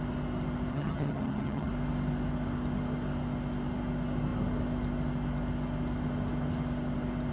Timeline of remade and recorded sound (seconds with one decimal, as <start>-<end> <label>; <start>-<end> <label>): 0.0-0.7 recorded; 0.7-1.7 remade; 1.7-7.3 recorded